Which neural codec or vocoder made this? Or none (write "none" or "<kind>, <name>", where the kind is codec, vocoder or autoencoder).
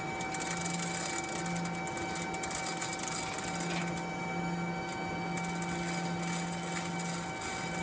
none